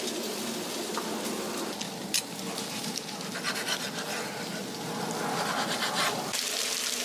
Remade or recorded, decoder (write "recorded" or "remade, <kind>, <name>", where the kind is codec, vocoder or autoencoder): recorded